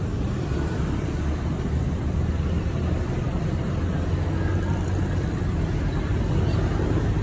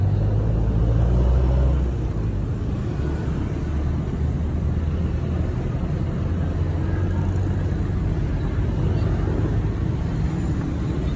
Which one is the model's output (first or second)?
first